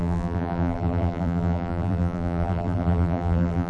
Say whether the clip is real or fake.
fake